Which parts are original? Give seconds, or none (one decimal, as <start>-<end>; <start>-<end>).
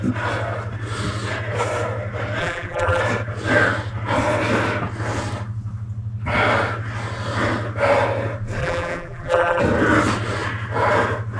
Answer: 0.0-2.4; 3.0-8.6; 9.6-11.4